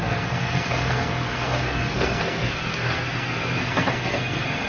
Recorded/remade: remade